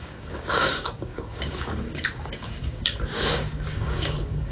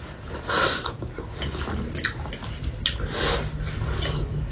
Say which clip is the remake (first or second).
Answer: first